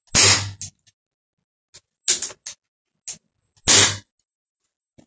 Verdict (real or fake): real